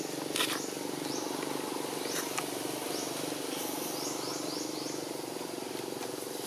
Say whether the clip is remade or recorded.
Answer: recorded